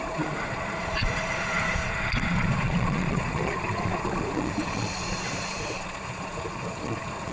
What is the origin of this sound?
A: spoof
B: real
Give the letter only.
A